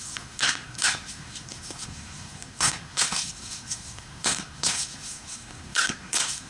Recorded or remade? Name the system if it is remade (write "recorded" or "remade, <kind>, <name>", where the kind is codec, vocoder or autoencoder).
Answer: remade, codec, SNAC